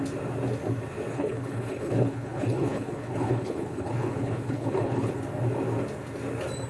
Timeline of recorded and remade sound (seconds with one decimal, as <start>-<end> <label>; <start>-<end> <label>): 0.0-1.1 recorded; 1.1-5.1 remade; 5.1-6.7 recorded